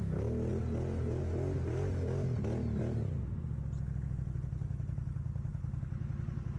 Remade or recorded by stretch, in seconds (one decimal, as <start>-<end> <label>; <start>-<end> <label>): 0.0-6.6 recorded